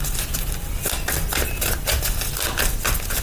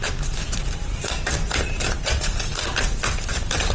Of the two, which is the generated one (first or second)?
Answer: second